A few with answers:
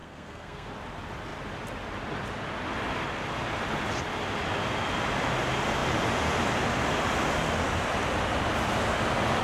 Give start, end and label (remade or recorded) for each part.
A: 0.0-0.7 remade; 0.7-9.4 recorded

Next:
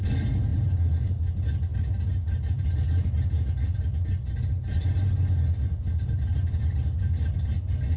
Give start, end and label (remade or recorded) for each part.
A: 0.0-8.0 recorded

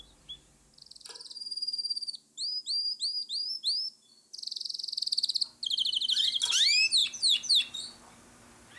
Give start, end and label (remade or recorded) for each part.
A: 0.0-7.0 recorded; 7.0-7.5 remade; 7.5-8.8 recorded

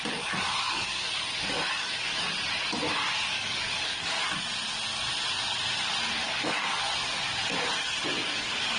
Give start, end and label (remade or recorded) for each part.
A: 0.0-0.6 recorded; 0.6-2.3 remade; 2.3-3.2 recorded; 3.2-4.2 remade; 4.2-6.2 recorded; 6.2-6.8 remade; 6.8-8.2 recorded; 8.2-8.8 remade

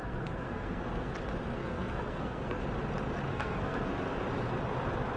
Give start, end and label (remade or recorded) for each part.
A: 0.0-1.1 remade; 1.1-1.6 recorded; 1.6-2.6 remade; 2.6-3.3 recorded; 3.3-3.9 remade; 3.9-5.2 recorded

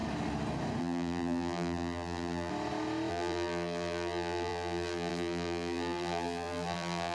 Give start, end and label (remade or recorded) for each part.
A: 0.0-0.8 recorded; 0.8-2.5 remade; 2.5-3.1 recorded; 3.1-7.1 remade

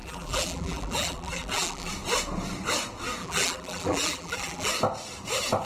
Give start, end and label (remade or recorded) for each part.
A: 0.0-1.9 remade; 1.9-3.2 recorded; 3.2-4.7 remade; 4.7-5.7 recorded

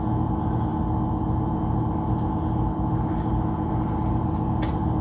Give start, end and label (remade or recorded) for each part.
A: 0.0-5.0 recorded